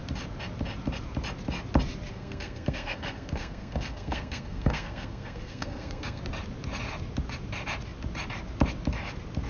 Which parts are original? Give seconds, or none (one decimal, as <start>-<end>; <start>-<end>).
0.0-2.1; 6.2-9.5

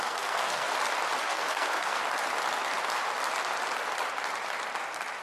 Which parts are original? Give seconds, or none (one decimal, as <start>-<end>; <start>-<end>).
0.7-1.2; 2.0-5.2

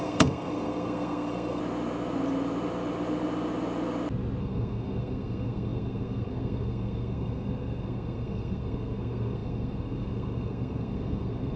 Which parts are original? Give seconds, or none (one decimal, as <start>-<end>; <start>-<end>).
1.6-4.4